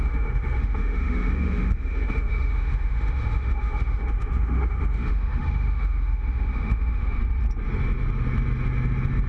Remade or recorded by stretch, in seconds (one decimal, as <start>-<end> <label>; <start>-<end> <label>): 0.0-7.2 remade; 7.2-9.3 recorded